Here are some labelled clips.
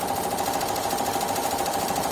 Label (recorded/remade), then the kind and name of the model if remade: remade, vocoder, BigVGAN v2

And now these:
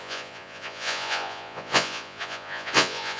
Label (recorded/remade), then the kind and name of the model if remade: remade, vocoder, Vocos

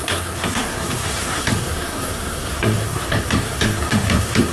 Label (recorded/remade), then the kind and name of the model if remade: remade, codec, SNAC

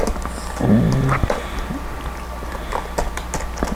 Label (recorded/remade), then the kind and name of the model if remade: recorded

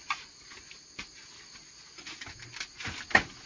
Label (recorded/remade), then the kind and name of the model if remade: recorded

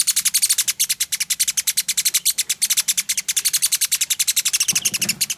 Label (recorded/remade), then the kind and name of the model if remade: recorded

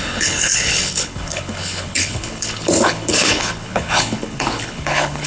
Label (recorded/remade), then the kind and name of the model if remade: remade, codec, HILCodec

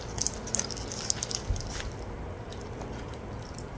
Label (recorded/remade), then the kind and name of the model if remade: recorded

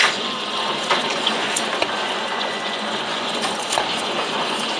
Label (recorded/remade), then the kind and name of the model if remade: remade, vocoder, Vocos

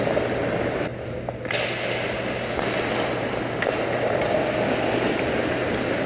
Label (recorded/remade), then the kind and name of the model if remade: recorded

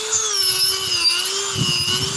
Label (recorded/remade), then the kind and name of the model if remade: recorded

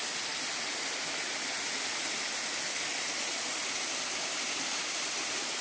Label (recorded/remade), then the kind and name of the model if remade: remade, vocoder, BigVGAN v2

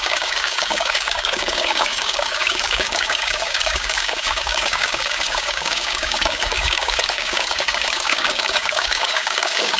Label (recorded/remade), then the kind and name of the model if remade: remade, codec, DAC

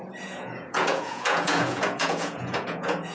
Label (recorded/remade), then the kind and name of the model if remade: remade, vocoder, Vocos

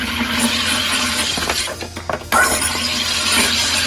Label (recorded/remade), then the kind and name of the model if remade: recorded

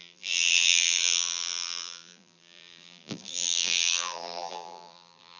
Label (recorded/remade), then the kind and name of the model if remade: remade, vocoder, BigVGAN v2